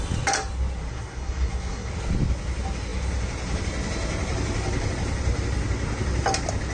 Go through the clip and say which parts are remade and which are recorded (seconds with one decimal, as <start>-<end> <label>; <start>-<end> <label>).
0.0-0.9 recorded; 0.9-1.9 remade; 1.9-6.7 recorded